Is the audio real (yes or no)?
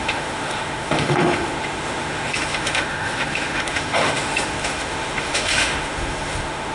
no